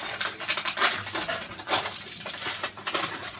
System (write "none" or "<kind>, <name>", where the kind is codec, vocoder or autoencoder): vocoder, BigVGAN v2